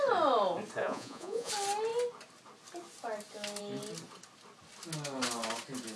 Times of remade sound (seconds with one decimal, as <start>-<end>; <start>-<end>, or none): 0.8-1.5